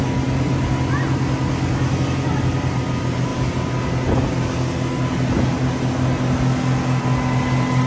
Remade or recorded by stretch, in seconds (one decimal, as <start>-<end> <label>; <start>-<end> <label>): 0.0-7.9 recorded